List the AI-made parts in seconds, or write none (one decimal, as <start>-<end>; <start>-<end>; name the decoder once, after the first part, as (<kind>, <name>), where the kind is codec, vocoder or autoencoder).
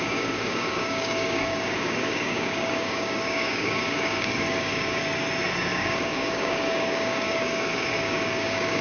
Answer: 0.0-5.0 (codec, DAC); 5.7-8.8